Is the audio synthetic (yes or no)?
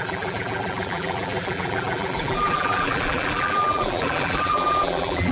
yes